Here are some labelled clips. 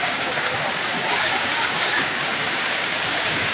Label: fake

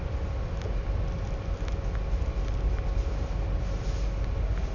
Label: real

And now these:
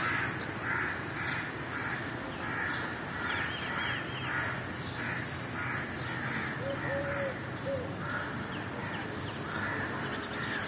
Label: real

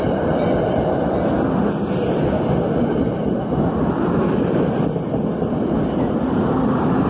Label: real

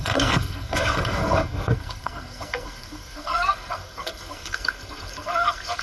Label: fake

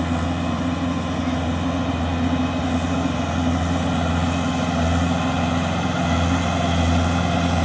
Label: real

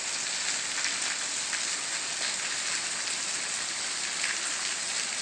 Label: real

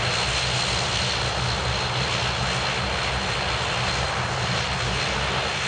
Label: real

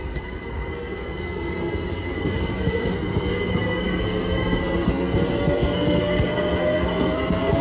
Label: fake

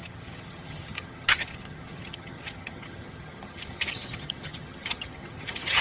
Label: fake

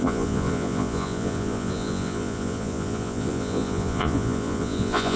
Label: fake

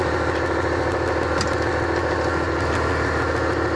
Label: real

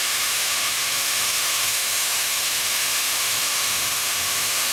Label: fake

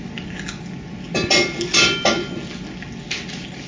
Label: real